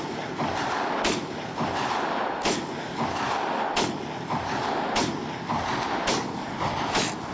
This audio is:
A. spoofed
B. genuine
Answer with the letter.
B